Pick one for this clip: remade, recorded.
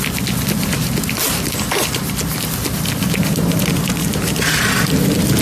recorded